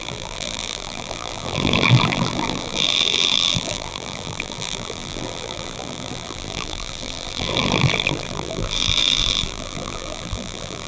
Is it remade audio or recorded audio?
remade